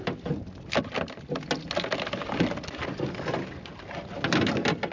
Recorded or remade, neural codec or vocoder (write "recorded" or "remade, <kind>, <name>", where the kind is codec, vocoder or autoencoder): recorded